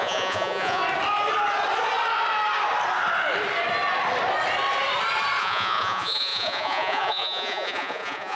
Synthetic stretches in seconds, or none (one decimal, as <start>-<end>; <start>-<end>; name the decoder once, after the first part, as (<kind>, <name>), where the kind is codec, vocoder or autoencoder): 0.0-0.8 (vocoder, Vocos); 5.4-8.4